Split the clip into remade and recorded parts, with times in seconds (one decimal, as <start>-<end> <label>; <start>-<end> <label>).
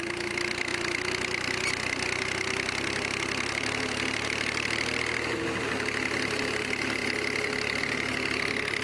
0.0-8.8 recorded